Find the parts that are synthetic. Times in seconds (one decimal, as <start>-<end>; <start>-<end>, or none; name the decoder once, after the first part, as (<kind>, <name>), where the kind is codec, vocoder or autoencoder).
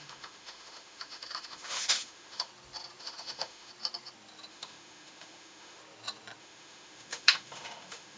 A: 0.0-2.5 (autoencoder, DAC-VAE); 3.0-3.7; 4.5-5.8; 6.4-8.2